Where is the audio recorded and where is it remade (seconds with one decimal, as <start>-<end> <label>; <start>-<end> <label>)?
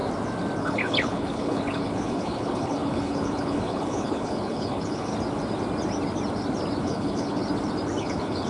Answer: 0.0-0.6 recorded; 0.6-5.1 remade; 5.1-6.8 recorded; 6.8-7.4 remade; 7.4-8.0 recorded; 8.0-8.5 remade